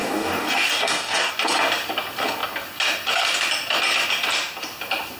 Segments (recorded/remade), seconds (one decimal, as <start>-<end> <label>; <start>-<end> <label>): 0.0-1.3 remade; 1.3-5.2 recorded